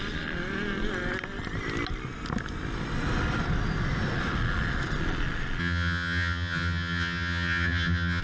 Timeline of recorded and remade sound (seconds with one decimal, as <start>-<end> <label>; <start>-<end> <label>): 0.0-5.6 recorded; 5.6-8.2 remade